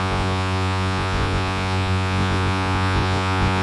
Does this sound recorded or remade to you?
remade